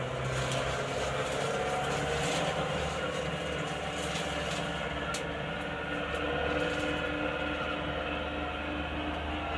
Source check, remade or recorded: recorded